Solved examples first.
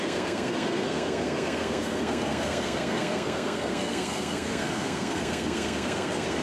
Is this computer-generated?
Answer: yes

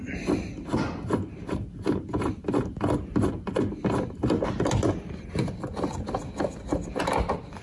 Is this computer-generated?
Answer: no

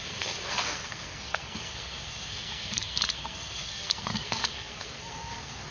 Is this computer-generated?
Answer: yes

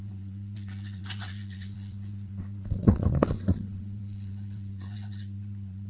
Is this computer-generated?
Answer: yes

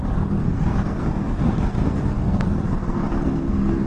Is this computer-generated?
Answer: yes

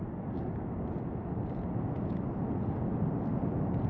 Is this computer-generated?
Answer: no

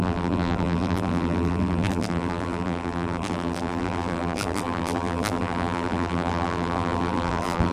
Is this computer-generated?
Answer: yes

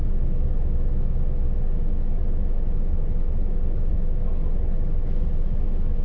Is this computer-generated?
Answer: no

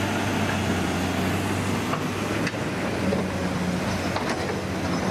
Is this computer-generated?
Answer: no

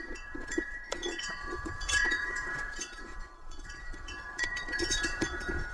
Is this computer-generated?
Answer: yes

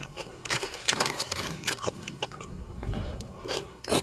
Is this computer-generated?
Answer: yes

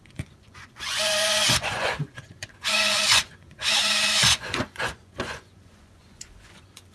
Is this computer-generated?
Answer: yes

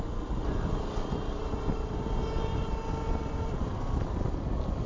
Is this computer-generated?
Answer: no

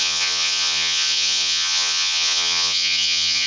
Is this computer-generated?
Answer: yes